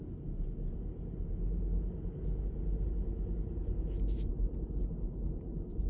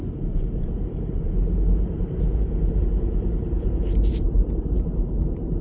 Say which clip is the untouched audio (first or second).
first